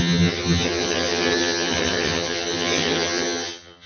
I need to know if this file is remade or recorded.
remade